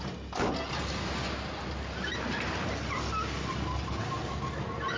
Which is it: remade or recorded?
recorded